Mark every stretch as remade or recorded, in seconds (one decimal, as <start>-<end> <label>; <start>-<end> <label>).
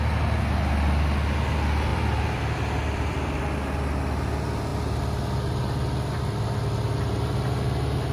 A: 0.0-1.9 recorded; 1.9-3.4 remade; 3.4-4.7 recorded; 4.7-6.2 remade; 6.2-8.1 recorded